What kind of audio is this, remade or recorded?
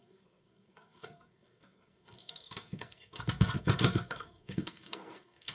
remade